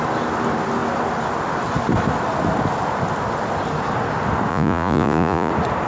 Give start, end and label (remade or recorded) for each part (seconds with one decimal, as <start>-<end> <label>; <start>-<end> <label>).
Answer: 0.0-4.5 recorded; 4.5-5.5 remade; 5.5-5.9 recorded